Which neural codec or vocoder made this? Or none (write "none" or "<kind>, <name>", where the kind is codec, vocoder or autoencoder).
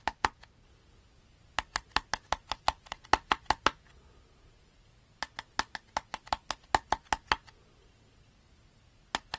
none